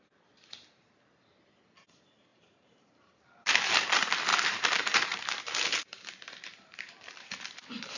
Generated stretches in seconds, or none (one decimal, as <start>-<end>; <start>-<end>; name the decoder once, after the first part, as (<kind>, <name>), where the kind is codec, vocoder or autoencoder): 2.3-3.9 (vocoder, BigVGAN v2); 4.3-8.0

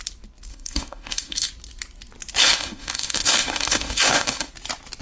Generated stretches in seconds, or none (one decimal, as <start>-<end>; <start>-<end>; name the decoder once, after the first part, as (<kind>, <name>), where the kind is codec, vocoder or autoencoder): 0.5-1.5 (autoencoder, DAC-VAE); 2.4-4.5

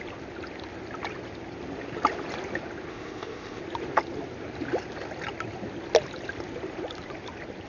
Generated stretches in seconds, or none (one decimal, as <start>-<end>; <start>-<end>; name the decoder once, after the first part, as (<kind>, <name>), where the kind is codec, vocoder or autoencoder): 2.9-3.6 (codec, ZipCodec)

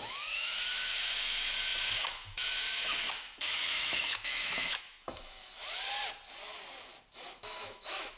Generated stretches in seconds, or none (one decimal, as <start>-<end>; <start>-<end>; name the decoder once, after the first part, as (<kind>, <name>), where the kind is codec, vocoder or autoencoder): 0.0-5.6 (autoencoder, DAC-VAE); 7.1-8.2

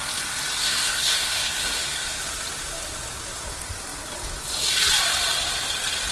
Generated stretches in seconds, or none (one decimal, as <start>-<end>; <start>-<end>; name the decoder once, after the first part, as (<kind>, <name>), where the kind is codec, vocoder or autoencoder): 0.6-2.2 (codec, SNAC)

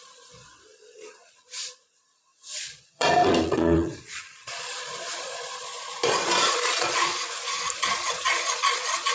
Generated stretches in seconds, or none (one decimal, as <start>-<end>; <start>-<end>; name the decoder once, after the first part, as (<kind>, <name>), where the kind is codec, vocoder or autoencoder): 0.0-7.1 (vocoder, Vocos); 7.8-9.1